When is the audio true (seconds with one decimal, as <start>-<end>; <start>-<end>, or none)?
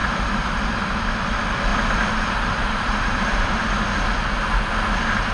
1.0-1.7; 3.7-5.3